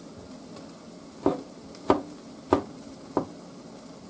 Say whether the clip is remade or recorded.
recorded